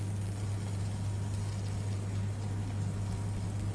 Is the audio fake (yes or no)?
no